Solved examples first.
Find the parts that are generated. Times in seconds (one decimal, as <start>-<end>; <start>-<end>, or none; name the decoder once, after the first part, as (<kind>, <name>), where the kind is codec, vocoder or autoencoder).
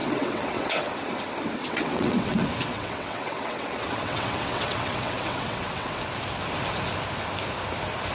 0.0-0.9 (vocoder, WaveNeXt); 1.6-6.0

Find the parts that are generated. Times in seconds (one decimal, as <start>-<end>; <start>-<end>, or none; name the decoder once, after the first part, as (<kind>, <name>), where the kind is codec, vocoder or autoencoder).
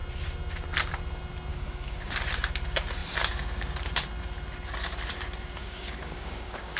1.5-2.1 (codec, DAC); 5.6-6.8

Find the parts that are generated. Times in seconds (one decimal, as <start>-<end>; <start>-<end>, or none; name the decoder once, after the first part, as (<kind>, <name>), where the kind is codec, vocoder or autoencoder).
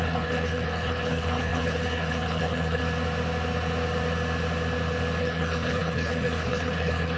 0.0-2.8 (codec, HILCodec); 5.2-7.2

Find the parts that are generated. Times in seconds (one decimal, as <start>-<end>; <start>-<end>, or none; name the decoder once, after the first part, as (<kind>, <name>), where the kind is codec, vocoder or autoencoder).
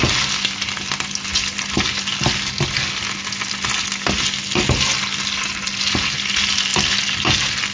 none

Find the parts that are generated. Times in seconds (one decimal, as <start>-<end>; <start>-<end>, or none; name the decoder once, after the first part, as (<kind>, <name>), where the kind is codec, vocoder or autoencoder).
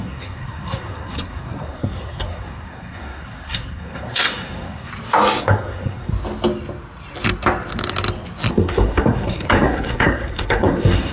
0.0-4.9 (codec, SNAC); 5.4-6.1; 8.5-11.1